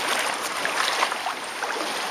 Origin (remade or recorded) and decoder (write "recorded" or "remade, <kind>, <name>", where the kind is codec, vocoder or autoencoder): recorded